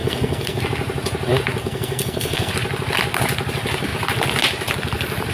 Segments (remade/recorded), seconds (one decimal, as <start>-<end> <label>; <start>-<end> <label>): 0.0-0.6 remade; 0.6-1.6 recorded; 1.6-2.5 remade; 2.5-5.3 recorded